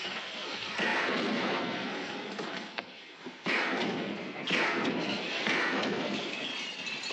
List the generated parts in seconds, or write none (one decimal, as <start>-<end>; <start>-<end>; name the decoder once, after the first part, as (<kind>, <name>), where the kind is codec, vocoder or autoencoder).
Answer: 0.0-6.5 (codec, SNAC)